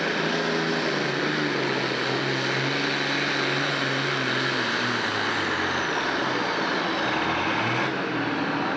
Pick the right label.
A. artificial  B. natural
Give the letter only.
B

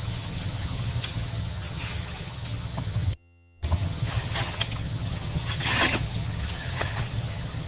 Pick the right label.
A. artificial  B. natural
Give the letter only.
A